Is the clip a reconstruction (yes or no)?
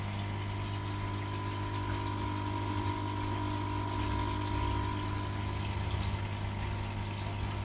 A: no